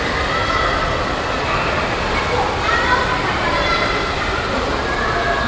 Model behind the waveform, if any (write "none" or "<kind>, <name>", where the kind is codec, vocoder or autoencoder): none